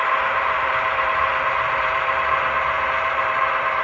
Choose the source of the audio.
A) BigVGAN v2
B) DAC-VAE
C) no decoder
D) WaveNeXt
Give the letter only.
A